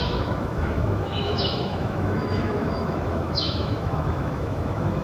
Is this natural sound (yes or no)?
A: no